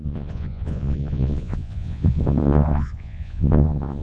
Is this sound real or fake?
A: fake